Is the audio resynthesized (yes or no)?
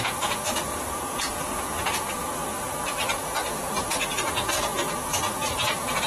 yes